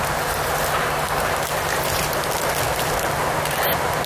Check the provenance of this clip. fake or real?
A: real